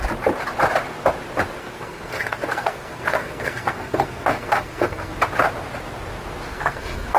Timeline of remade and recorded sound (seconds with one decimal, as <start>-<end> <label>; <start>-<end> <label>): 0.0-1.6 recorded; 1.6-5.1 remade; 5.1-6.5 recorded; 6.5-7.2 remade